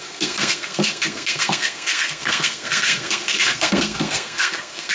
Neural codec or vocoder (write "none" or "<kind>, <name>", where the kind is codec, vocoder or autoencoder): codec, SNAC